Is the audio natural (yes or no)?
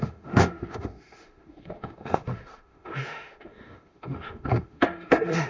no